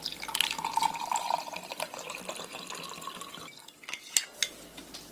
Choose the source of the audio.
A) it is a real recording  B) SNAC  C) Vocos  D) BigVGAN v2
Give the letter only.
A